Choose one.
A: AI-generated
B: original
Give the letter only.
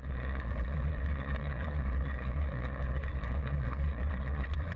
A